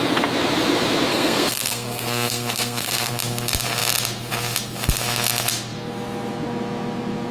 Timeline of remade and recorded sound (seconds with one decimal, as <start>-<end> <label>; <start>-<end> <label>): 0.0-1.1 recorded; 1.1-3.1 remade; 3.1-7.3 recorded